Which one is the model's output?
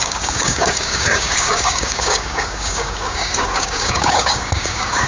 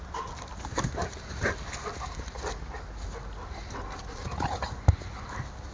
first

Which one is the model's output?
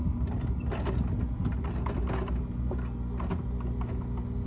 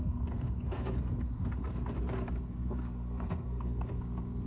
second